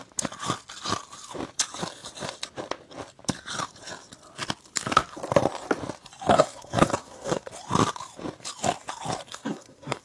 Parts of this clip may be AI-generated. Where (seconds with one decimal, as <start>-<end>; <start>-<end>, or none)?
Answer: 6.3-7.5; 9.3-10.0